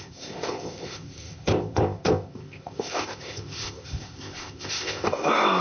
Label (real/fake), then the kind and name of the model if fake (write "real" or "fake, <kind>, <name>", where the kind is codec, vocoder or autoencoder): fake, codec, ZipCodec